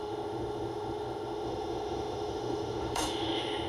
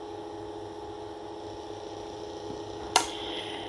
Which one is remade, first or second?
first